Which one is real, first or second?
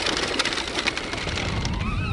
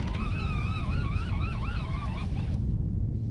first